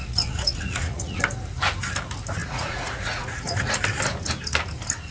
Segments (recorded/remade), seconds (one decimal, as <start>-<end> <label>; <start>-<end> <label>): 0.0-1.2 remade; 1.2-2.4 recorded; 2.4-3.7 remade; 3.7-5.1 recorded